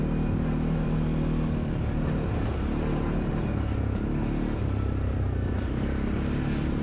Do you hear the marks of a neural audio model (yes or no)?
no